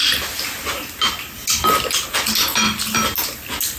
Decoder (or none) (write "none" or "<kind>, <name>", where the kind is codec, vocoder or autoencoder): none